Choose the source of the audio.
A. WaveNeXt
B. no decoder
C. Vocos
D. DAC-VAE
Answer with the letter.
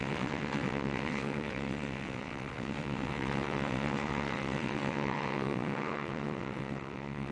A